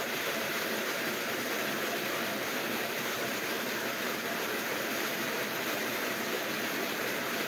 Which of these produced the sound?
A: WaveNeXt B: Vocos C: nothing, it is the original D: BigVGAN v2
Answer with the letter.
D